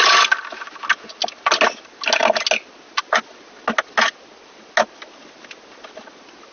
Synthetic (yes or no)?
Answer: no